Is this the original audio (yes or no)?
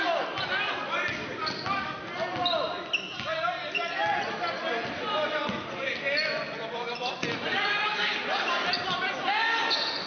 yes